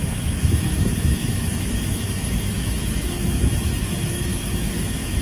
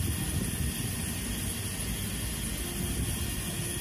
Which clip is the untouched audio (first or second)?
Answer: second